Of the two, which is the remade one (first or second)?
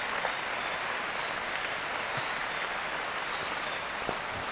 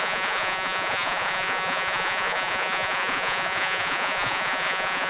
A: second